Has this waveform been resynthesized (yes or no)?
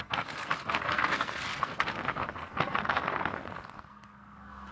yes